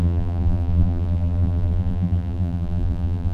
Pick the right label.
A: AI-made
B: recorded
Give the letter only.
A